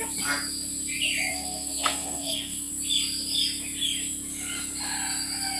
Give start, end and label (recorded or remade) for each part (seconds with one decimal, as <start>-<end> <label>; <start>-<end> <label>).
0.0-1.3 recorded; 1.3-2.7 remade; 2.7-5.6 recorded